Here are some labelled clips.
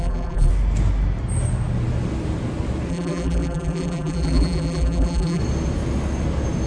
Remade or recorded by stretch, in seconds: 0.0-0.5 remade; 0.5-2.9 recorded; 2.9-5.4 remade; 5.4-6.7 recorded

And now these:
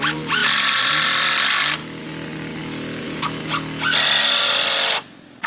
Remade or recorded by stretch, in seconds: 0.0-0.4 recorded; 0.4-0.9 remade; 0.9-5.5 recorded

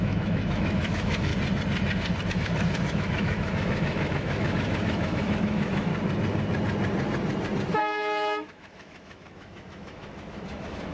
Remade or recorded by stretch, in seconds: 0.0-1.3 remade; 1.3-2.3 recorded; 2.3-5.9 remade; 5.9-7.8 recorded; 7.8-10.9 remade

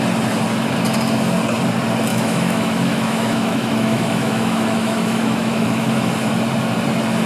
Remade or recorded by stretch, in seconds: 0.0-2.1 recorded; 2.1-6.1 remade; 6.1-7.3 recorded

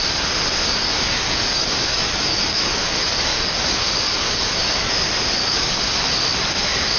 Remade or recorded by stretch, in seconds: 0.0-0.7 recorded; 0.7-4.9 remade; 4.9-5.4 recorded; 5.4-6.0 remade; 6.0-7.0 recorded